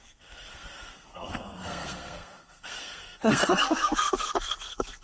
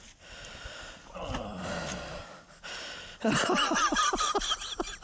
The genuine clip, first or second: second